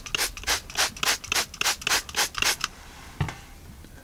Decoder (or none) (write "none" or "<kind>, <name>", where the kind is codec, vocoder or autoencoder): none